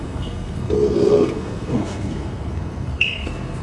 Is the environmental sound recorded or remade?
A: remade